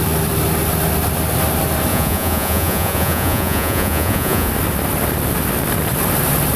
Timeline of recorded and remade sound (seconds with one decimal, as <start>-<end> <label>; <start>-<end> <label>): 0.0-1.9 recorded; 1.9-4.5 remade; 4.5-6.6 recorded